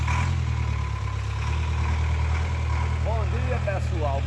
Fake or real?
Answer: real